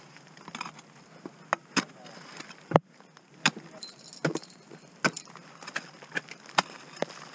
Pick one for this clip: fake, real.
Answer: real